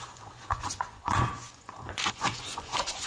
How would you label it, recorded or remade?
remade